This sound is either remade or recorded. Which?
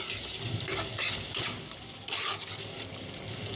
recorded